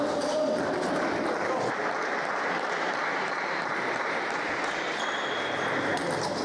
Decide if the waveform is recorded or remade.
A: recorded